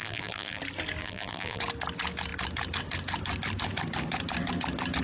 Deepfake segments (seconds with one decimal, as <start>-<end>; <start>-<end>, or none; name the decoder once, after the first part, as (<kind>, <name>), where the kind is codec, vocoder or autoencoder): 0.0-0.6 (vocoder, BigVGAN v2); 1.0-1.6